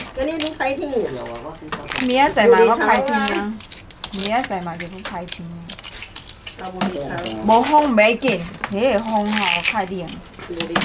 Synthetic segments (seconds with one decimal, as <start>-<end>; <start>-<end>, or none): none